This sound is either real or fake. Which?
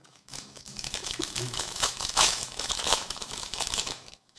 fake